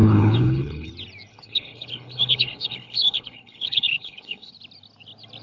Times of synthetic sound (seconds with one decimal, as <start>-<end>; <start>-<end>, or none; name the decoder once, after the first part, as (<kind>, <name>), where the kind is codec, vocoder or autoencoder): 0.0-0.9 (codec, HILCodec); 1.3-4.5